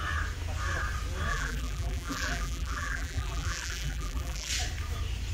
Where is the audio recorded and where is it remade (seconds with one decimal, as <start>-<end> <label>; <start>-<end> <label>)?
0.0-1.3 recorded; 1.3-4.5 remade; 4.5-5.3 recorded